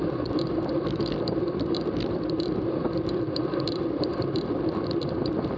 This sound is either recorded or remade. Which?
remade